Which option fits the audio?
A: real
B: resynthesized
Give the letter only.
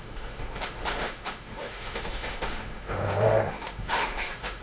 B